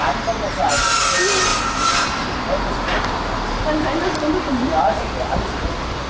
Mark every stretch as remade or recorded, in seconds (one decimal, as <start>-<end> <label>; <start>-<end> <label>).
0.0-6.1 recorded